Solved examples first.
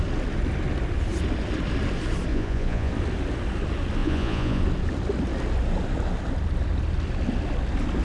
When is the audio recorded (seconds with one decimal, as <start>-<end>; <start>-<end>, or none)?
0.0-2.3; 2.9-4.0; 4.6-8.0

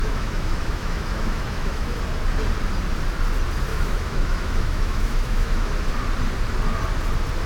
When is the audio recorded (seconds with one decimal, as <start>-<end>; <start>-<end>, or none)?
2.0-3.7; 5.9-7.5

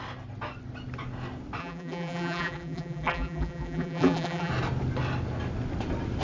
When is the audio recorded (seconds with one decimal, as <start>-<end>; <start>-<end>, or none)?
0.0-1.6; 4.5-6.2